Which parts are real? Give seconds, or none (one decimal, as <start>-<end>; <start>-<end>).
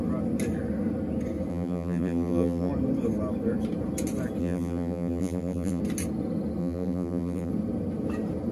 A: 0.0-1.5; 2.7-4.4; 5.8-6.6; 7.5-8.5